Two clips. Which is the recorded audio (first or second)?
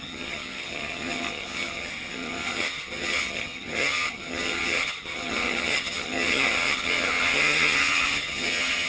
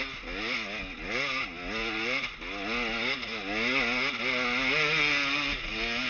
second